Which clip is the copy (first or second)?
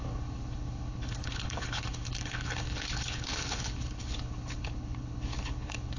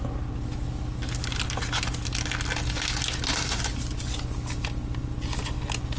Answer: first